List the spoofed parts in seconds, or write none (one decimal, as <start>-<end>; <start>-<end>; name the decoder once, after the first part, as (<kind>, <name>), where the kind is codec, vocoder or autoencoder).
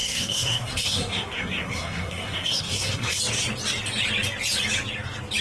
0.0-3.2 (codec, SNAC)